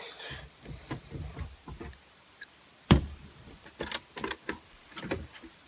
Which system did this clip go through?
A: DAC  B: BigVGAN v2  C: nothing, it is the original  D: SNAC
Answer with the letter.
B